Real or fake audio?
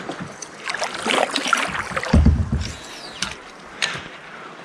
real